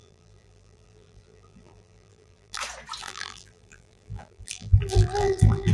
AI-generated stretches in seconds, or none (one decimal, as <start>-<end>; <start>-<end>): 0.0-2.6; 3.0-5.7